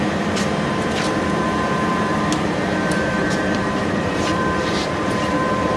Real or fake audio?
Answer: fake